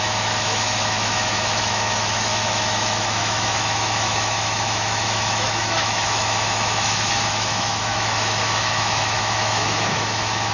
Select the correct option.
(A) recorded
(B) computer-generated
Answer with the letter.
B